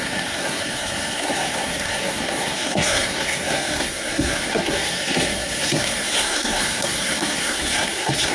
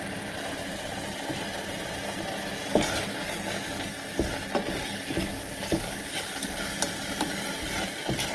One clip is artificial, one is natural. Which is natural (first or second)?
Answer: second